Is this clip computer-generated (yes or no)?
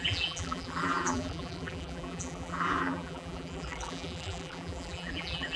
yes